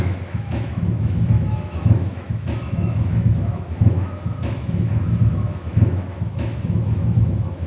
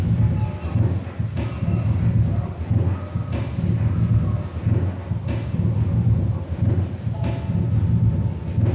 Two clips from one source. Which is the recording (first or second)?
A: second